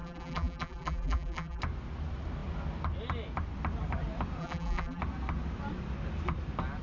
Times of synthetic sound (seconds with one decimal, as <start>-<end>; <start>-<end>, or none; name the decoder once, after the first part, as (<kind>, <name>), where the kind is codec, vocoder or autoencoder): 0.0-1.6 (vocoder, BigVGAN v2); 4.4-5.0

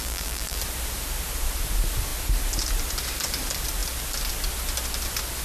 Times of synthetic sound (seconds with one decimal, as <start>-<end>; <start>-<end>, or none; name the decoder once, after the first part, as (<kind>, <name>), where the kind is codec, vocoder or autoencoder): 0.0-0.6 (vocoder, BigVGAN v2)

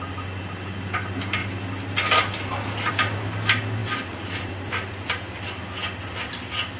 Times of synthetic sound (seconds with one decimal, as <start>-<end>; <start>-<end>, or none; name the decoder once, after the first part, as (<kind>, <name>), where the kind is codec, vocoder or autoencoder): 3.8-5.6 (vocoder, BigVGAN v2)